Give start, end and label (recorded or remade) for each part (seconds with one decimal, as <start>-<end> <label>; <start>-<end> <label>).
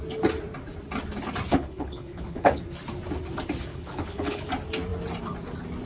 0.0-1.5 recorded; 1.5-2.6 remade; 2.6-3.7 recorded; 3.7-4.5 remade; 4.5-5.9 recorded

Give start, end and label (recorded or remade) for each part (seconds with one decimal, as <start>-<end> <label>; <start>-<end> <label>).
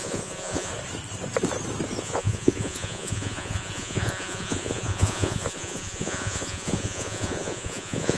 0.0-0.7 remade; 0.7-2.0 recorded; 2.0-8.2 remade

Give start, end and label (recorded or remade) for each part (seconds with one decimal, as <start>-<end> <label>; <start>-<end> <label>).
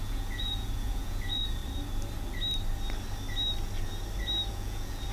0.0-1.6 remade; 1.6-4.5 recorded; 4.5-5.1 remade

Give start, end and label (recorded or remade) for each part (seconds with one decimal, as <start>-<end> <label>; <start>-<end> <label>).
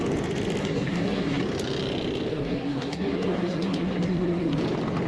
0.0-0.6 recorded; 0.6-1.4 remade; 1.4-2.3 recorded; 2.3-4.6 remade; 4.6-5.1 recorded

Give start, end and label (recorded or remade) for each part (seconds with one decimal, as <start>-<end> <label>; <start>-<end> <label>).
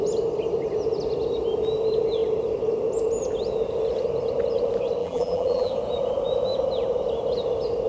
0.0-5.0 recorded; 5.0-5.7 remade; 5.7-7.9 recorded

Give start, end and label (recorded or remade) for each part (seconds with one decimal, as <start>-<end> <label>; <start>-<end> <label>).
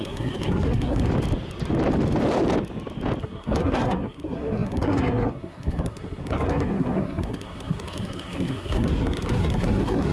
0.0-1.1 remade; 1.1-3.2 recorded; 3.2-10.1 remade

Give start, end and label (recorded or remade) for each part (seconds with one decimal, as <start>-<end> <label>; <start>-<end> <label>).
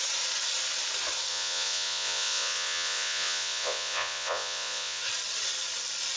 0.0-1.3 recorded; 1.3-5.0 remade; 5.0-6.2 recorded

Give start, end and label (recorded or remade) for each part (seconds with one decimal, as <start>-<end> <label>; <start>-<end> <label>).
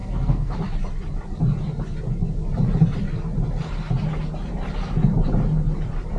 0.0-0.6 remade; 0.6-6.2 recorded